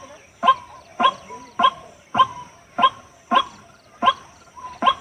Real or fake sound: fake